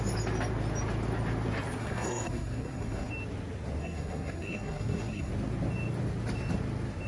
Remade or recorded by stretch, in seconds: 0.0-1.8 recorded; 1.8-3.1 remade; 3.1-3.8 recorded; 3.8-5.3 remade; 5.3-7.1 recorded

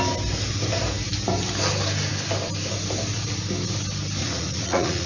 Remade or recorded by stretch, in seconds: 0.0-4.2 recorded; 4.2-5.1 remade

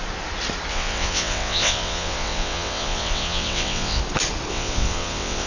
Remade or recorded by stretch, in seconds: 0.0-0.7 recorded; 0.7-4.0 remade; 4.0-4.5 recorded; 4.5-5.5 remade